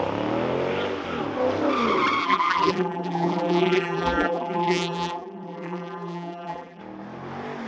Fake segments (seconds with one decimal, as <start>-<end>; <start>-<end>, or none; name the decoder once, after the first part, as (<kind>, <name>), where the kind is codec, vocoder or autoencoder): 2.2-6.8 (vocoder, BigVGAN v2)